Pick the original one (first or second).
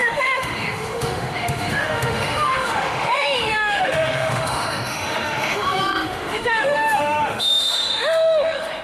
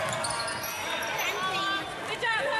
second